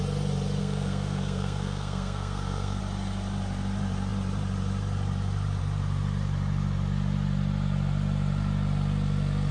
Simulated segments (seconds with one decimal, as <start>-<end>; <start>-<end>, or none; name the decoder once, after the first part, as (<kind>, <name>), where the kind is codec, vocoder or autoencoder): 0.6-2.8 (codec, SNAC)